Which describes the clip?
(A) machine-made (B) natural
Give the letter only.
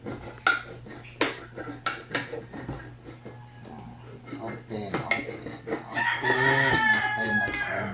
B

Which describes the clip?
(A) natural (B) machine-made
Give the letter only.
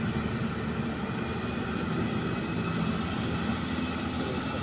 A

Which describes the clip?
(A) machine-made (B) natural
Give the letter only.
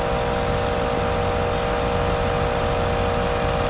B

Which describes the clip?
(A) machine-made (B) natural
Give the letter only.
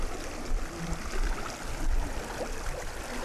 B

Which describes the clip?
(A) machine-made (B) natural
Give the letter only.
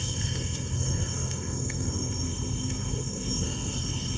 A